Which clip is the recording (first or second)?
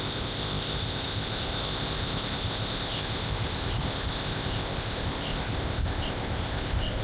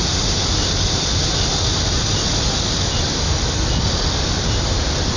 second